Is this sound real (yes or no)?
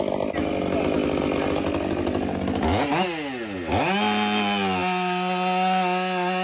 yes